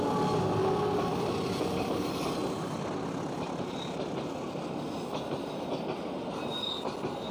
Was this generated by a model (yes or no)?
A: no